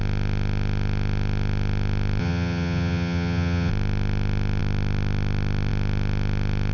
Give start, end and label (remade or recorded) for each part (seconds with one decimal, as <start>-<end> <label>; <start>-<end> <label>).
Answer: 0.0-2.2 recorded; 2.2-3.7 remade; 3.7-6.7 recorded